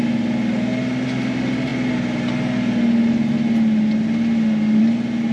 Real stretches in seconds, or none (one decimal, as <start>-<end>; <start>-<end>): 0.0-5.3